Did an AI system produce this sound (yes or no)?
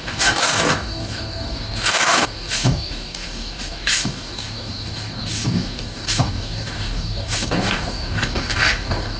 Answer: yes